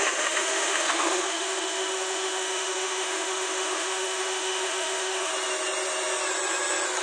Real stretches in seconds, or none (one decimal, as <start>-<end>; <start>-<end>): 5.3-7.0